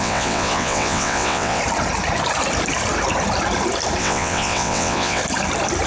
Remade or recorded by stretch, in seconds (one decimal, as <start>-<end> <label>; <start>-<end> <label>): 0.0-1.6 remade; 1.6-4.0 recorded; 4.0-5.2 remade; 5.2-5.9 recorded